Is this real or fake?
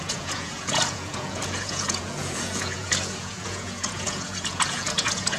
fake